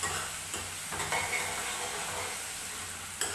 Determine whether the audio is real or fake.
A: real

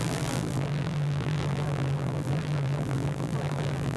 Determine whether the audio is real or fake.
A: fake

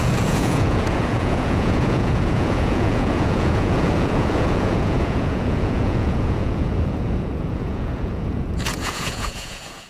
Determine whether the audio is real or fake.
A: fake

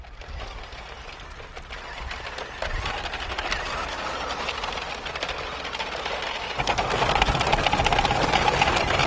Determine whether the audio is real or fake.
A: real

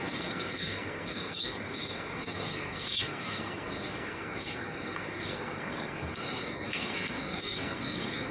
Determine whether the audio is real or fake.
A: fake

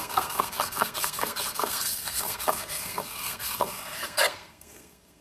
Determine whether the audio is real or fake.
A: fake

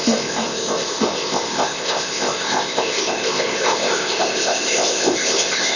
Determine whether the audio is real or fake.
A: fake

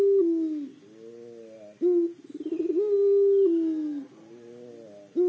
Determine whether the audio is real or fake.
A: real